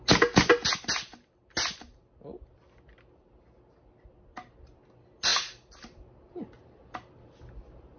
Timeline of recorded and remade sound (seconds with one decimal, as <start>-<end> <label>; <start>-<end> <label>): 0.0-8.0 recorded